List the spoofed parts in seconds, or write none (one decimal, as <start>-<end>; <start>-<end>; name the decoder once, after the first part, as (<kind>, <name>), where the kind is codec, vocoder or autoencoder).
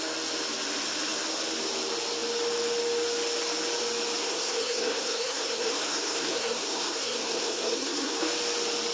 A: 4.2-8.2 (codec, SNAC)